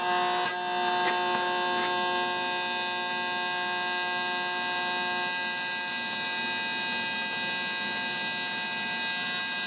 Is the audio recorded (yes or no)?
yes